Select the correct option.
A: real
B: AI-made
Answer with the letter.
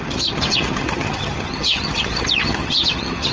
B